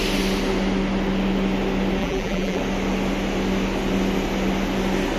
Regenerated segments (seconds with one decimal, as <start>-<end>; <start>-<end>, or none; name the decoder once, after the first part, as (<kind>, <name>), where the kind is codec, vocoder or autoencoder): 2.0-2.6 (vocoder, BigVGAN v2)